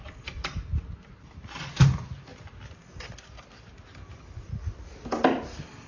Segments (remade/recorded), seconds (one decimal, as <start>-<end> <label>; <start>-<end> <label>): 0.0-5.9 recorded